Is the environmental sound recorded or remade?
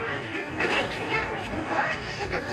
remade